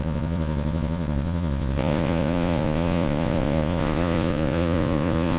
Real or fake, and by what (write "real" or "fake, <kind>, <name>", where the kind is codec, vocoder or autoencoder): fake, vocoder, Vocos